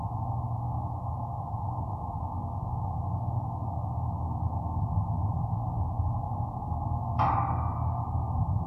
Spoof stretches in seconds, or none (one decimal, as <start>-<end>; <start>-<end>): 5.3-7.0